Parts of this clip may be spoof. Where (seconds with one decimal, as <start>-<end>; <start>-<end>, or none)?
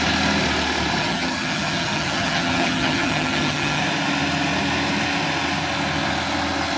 1.0-3.8